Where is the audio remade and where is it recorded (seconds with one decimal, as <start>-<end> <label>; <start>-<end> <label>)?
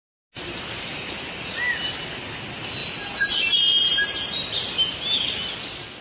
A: 0.0-6.0 recorded